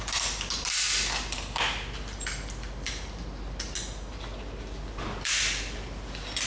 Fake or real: real